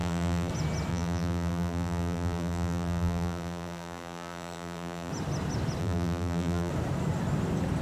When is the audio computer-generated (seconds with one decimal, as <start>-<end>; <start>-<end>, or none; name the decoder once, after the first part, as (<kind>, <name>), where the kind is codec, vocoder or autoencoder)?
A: 0.0-0.5 (vocoder, BigVGAN v2); 0.9-5.1; 5.8-6.7